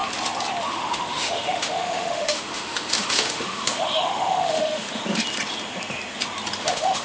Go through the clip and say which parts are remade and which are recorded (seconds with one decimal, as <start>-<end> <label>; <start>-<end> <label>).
0.0-0.6 recorded; 0.6-5.0 remade; 5.0-6.6 recorded; 6.6-7.0 remade